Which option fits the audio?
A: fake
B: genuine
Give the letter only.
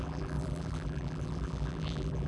A